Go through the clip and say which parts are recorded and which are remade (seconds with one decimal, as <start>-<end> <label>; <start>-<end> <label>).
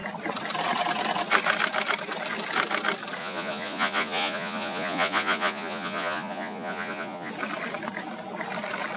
0.0-3.2 recorded; 3.2-7.3 remade; 7.3-9.0 recorded